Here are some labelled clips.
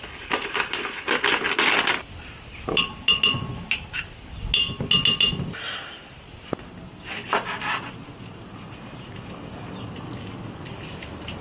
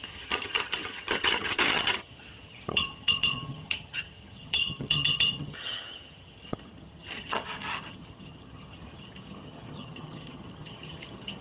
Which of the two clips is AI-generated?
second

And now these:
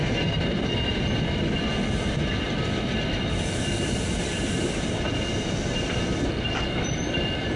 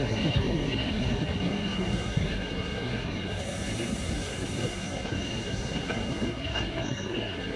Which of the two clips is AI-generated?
second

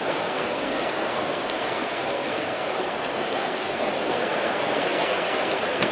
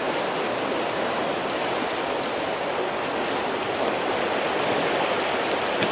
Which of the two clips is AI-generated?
first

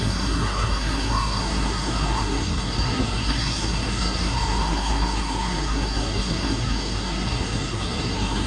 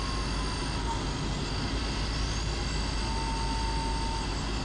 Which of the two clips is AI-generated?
first